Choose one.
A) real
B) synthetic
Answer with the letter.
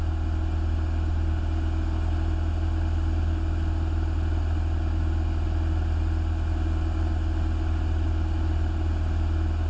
A